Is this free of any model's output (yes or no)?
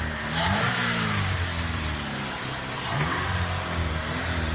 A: no